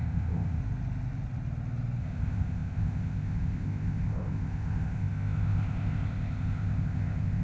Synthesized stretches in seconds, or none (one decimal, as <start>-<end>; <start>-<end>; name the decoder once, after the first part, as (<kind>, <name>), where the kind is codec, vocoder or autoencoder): 0.0-0.6 (codec, ZipCodec); 2.0-7.4